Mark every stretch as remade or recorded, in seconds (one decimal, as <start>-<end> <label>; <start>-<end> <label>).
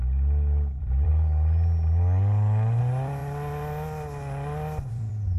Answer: 0.0-1.1 remade; 1.1-2.8 recorded; 2.8-3.2 remade; 3.2-4.9 recorded; 4.9-5.4 remade